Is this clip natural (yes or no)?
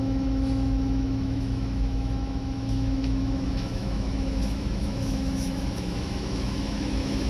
no